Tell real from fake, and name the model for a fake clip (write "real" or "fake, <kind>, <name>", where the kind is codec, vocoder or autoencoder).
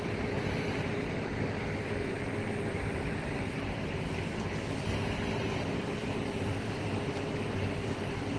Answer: fake, vocoder, BigVGAN v2